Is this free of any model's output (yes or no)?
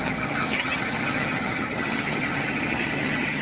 no